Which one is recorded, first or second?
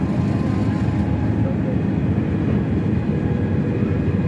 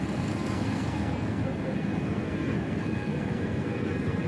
first